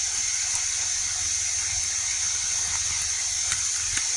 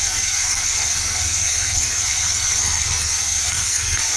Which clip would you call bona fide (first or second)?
first